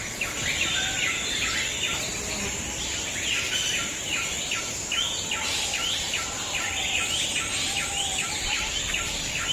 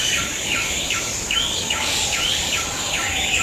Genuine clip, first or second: first